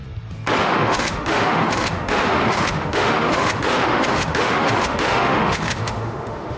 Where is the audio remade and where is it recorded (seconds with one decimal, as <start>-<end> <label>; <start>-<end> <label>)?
0.0-0.6 recorded; 0.6-6.6 remade